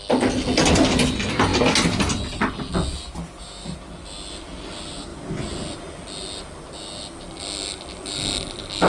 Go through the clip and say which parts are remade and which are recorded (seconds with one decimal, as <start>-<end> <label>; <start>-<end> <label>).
0.0-8.9 recorded